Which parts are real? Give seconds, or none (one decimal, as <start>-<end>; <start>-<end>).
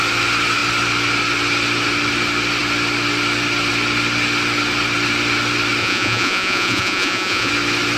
0.0-5.8; 7.5-8.0